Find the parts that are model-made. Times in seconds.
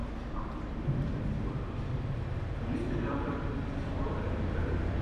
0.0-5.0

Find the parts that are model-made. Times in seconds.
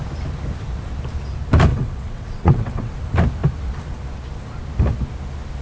1.7-2.9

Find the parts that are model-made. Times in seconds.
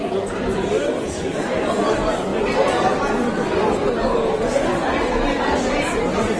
none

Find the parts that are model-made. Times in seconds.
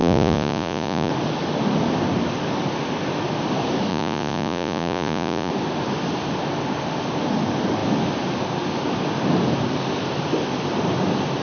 0.0-1.1; 3.9-5.5